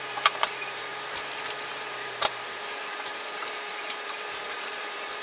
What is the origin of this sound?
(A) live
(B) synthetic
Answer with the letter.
B